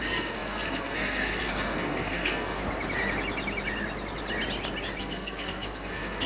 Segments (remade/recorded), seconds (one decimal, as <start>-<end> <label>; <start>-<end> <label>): 0.0-2.6 remade; 2.6-5.0 recorded; 5.0-6.3 remade